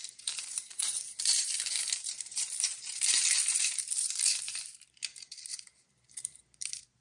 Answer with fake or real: fake